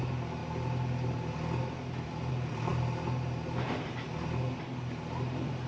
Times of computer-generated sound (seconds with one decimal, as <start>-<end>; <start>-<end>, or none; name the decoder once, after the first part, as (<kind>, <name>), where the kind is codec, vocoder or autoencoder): none